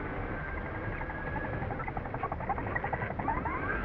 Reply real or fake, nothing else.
real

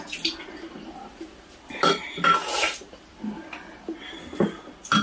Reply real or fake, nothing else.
real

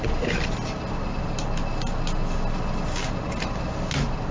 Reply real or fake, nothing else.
real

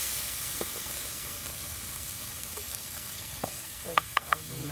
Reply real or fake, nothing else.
fake